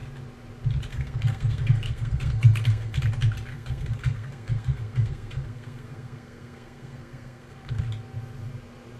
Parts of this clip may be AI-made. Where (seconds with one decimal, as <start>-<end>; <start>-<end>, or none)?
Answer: 0.9-3.0; 3.5-7.8